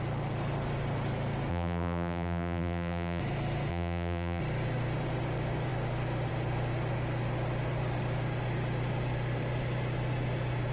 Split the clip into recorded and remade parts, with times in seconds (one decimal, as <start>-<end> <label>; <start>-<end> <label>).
0.0-1.5 recorded; 1.5-3.2 remade; 3.2-3.7 recorded; 3.7-4.4 remade; 4.4-10.7 recorded